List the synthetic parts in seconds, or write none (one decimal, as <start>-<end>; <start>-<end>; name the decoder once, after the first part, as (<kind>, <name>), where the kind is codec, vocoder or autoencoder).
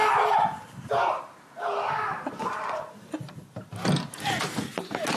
0.0-1.1 (vocoder, BigVGAN v2); 2.4-3.7